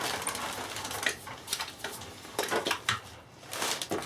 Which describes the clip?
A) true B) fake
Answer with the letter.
A